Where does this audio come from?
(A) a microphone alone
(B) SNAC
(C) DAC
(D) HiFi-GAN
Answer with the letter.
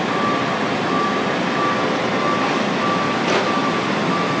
A